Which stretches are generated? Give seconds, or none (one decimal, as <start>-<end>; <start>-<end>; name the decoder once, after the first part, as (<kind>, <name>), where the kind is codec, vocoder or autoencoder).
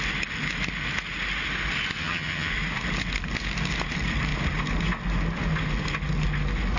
2.0-2.5 (vocoder, HiFi-GAN)